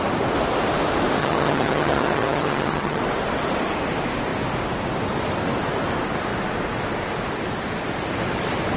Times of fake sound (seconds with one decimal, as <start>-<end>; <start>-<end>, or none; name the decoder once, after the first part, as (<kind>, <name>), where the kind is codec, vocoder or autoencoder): 1.2-3.0 (vocoder, HiFi-GAN)